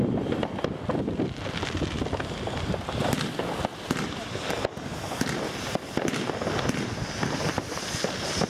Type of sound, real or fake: real